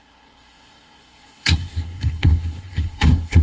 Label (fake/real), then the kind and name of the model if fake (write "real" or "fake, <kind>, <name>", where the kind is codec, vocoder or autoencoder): fake, codec, SNAC